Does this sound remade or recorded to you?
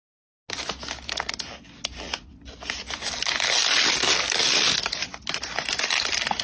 recorded